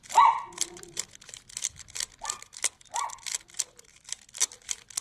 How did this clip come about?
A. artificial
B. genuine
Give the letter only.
B